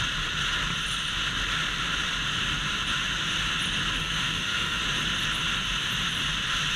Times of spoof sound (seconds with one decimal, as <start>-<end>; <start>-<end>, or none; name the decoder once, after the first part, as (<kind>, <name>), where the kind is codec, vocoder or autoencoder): 4.0-4.8 (autoencoder, DAC-VAE)